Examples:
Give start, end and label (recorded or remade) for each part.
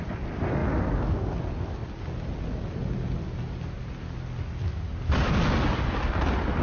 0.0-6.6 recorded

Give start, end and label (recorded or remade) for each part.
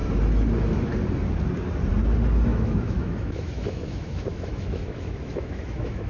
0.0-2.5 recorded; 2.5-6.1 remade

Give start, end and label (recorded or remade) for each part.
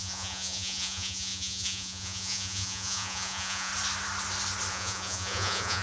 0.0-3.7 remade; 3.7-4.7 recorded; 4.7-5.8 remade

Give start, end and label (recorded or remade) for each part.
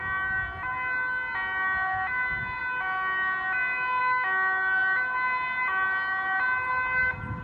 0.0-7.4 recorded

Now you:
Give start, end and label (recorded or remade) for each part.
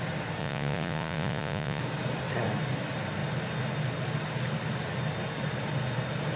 0.0-0.4 recorded; 0.4-1.8 remade; 1.8-6.4 recorded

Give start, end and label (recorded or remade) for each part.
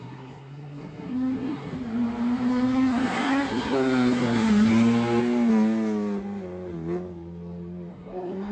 0.0-1.7 remade; 1.7-2.5 recorded; 2.5-4.7 remade; 4.7-7.9 recorded; 7.9-8.5 remade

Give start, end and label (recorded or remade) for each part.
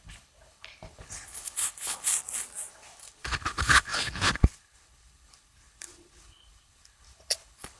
0.0-2.1 remade; 2.1-2.7 recorded; 2.7-7.8 remade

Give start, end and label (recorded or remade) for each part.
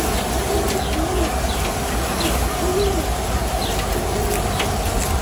0.0-2.7 recorded; 2.7-3.5 remade; 3.5-5.2 recorded